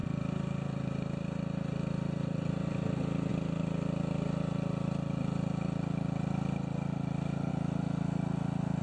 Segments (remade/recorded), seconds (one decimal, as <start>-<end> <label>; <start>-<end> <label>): 0.0-2.5 remade; 2.5-8.8 recorded